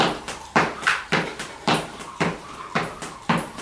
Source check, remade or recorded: remade